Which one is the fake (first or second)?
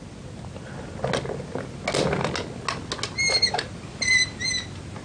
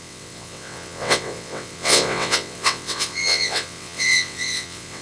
second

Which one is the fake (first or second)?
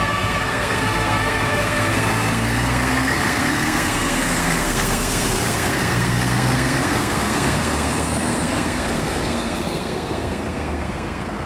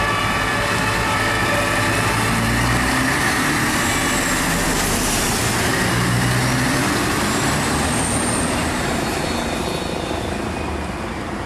first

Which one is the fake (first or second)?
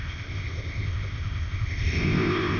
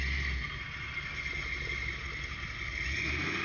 first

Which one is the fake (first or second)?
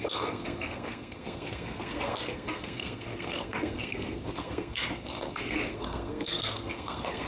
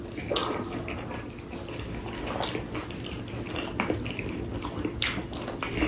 first